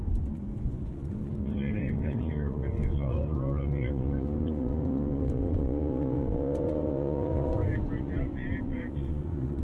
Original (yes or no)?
no